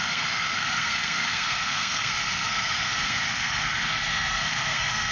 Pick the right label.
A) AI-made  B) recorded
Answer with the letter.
A